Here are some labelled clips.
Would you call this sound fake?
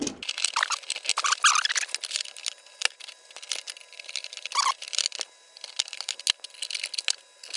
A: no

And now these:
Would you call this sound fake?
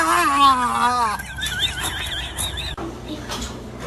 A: no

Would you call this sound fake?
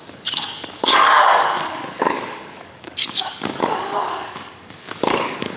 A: yes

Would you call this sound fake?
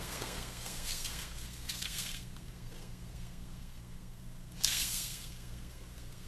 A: yes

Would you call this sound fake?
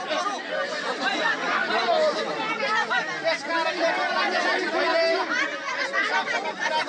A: no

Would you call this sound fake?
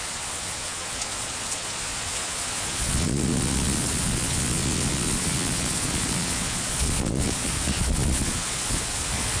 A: yes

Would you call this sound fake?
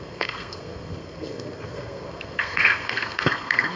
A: yes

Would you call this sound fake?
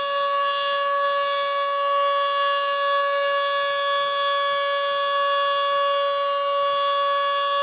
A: no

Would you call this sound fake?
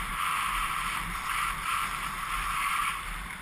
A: yes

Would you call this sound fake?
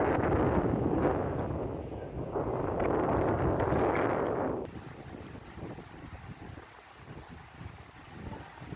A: no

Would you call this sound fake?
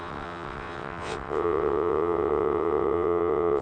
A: yes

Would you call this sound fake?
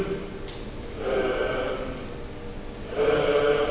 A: no